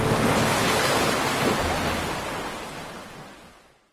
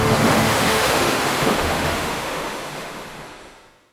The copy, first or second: second